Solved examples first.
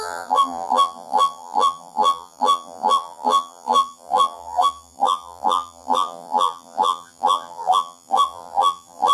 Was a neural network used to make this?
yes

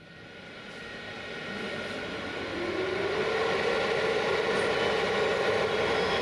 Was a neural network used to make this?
no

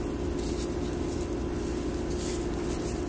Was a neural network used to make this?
no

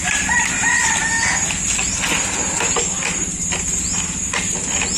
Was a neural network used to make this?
no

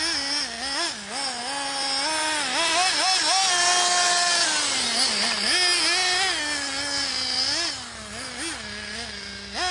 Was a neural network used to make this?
no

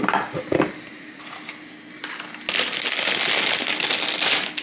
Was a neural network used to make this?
no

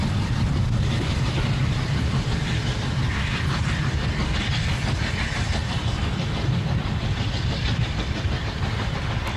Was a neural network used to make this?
yes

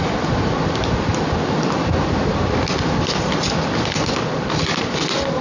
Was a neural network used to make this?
no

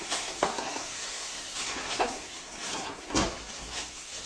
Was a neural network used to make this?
yes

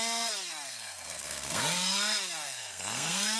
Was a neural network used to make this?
yes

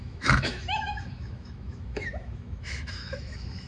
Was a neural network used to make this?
yes